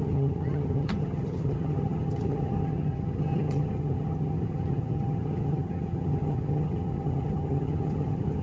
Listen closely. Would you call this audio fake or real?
fake